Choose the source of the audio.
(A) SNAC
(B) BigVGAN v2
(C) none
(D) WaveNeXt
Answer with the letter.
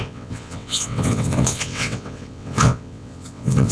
D